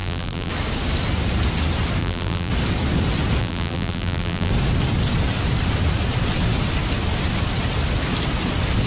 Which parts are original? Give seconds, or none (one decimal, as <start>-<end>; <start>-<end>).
0.5-2.0; 2.5-3.4; 4.5-8.9